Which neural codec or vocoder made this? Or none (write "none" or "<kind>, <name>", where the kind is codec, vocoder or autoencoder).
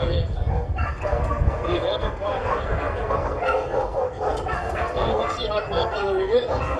codec, SNAC